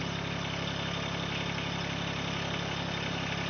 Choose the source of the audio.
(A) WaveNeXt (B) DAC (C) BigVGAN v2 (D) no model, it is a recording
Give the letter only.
D